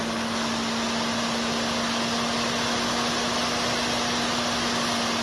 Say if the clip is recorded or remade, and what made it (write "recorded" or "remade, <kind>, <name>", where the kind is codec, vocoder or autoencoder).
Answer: recorded